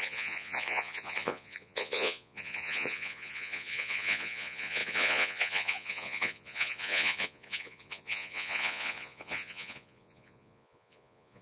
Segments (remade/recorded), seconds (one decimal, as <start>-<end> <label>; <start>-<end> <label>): 0.0-11.4 remade